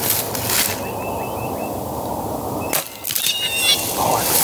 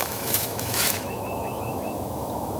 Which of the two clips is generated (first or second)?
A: second